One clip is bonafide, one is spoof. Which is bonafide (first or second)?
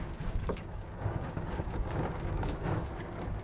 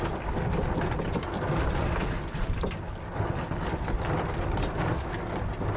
second